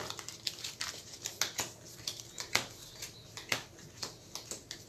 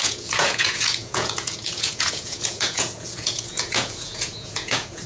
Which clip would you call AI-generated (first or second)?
second